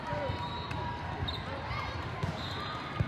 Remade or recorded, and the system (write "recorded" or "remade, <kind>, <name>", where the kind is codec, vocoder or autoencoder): remade, vocoder, BigVGAN v2